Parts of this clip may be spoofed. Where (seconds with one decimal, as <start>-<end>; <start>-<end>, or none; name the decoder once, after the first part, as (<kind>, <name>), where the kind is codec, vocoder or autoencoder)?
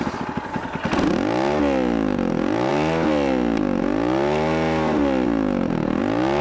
none